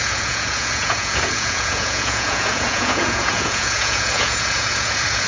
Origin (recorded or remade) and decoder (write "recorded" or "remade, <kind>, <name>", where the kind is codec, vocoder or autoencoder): remade, vocoder, Vocos